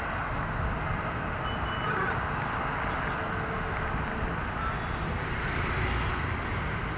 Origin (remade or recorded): recorded